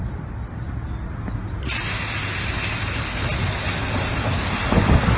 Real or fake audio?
real